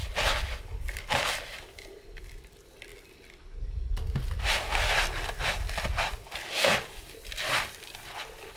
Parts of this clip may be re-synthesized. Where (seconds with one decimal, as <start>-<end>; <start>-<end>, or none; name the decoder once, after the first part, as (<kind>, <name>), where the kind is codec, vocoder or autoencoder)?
none